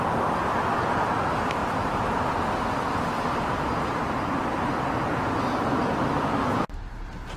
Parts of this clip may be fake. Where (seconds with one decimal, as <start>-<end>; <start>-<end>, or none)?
none